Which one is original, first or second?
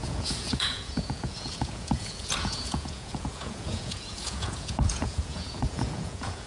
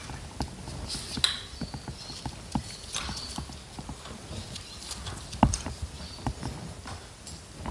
second